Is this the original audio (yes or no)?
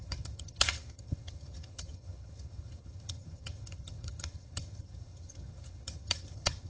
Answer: no